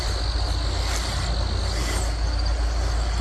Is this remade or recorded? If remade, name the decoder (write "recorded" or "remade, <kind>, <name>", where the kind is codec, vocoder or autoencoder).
recorded